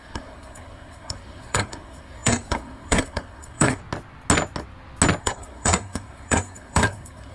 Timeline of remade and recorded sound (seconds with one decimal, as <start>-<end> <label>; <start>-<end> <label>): 0.0-3.8 remade; 3.8-5.2 recorded; 5.2-7.3 remade